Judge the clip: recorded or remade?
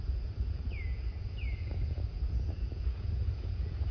remade